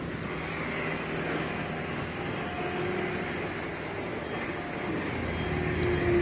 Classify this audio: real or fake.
real